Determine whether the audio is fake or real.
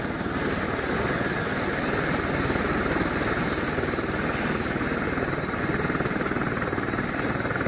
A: real